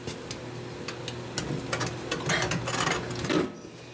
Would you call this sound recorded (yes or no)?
yes